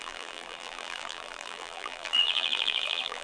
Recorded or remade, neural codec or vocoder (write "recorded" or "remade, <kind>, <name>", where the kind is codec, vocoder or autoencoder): remade, vocoder, BigVGAN v2